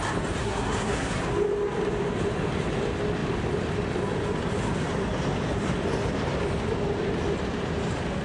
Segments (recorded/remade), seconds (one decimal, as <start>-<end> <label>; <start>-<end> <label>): 0.0-0.4 recorded; 0.4-1.2 remade; 1.2-8.2 recorded